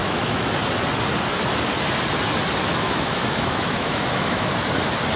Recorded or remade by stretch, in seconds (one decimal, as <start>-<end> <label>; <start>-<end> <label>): 0.0-0.5 remade; 0.5-2.7 recorded; 2.7-4.5 remade; 4.5-5.2 recorded